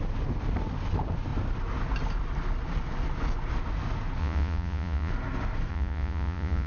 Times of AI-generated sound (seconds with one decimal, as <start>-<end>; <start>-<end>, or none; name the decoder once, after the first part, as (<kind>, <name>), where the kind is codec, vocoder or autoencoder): 4.2-5.1 (vocoder, Vocos); 5.7-6.7